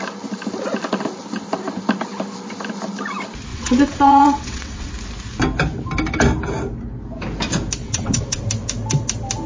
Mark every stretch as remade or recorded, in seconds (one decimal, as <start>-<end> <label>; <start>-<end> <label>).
0.0-3.5 recorded; 3.5-4.9 remade; 4.9-7.8 recorded; 7.8-8.4 remade; 8.4-9.5 recorded